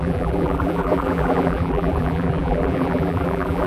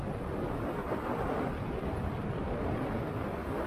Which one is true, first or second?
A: second